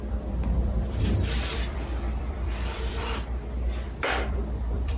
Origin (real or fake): fake